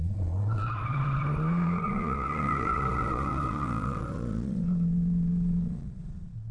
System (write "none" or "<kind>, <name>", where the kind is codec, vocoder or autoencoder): vocoder, Vocos